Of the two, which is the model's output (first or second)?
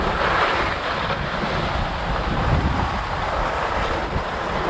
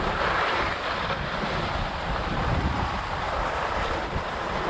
second